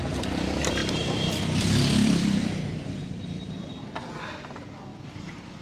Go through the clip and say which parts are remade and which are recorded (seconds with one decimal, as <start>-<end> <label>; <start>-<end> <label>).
0.0-5.6 remade